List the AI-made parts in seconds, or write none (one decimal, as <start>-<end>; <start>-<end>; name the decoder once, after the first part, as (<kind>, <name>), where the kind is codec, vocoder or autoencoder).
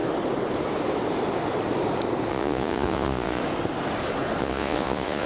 2.3-3.4 (vocoder, Vocos); 4.4-5.3